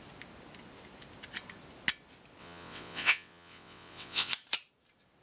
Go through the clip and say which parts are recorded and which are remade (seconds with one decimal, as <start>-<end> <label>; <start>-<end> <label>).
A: 0.0-2.4 recorded; 2.4-4.3 remade; 4.3-5.2 recorded